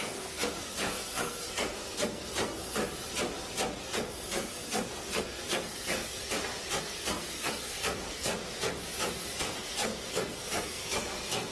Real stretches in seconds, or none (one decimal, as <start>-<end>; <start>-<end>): 2.8-3.8; 6.2-6.8; 8.3-9.4